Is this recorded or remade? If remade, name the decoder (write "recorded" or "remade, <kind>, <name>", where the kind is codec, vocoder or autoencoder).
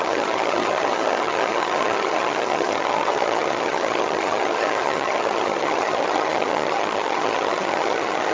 remade, vocoder, HiFi-GAN